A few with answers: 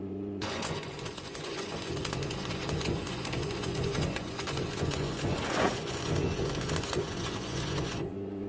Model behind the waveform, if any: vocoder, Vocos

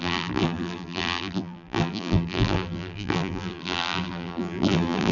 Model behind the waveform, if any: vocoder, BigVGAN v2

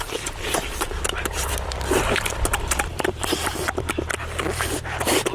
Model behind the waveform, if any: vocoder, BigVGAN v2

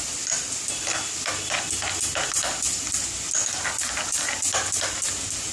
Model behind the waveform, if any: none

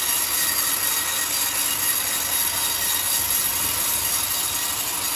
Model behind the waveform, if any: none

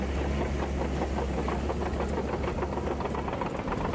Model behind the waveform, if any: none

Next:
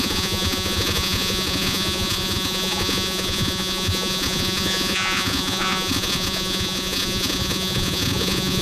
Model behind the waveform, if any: vocoder, Vocos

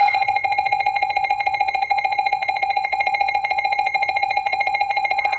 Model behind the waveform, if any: vocoder, WaveNeXt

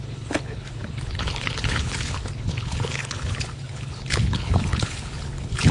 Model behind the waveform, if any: codec, HILCodec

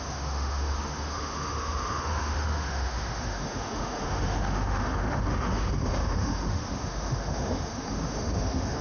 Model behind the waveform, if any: autoencoder, DAC-VAE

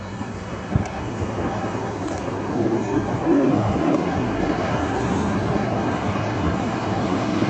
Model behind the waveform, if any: codec, SNAC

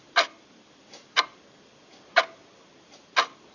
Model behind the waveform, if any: none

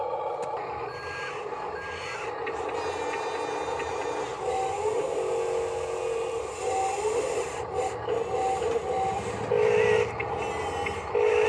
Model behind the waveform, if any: none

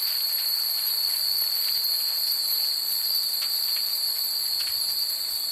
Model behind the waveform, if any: none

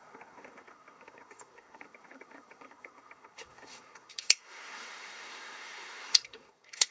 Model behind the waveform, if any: codec, SNAC